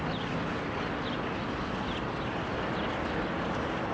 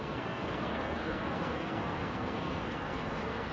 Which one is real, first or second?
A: first